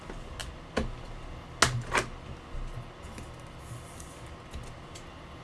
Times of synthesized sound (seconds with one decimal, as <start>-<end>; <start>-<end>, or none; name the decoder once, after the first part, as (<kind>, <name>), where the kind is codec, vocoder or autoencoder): none